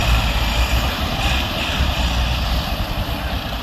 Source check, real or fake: real